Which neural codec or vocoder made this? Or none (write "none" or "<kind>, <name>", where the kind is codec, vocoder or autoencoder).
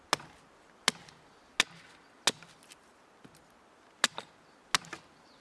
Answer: none